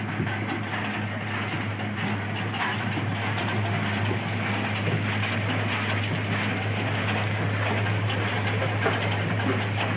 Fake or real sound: real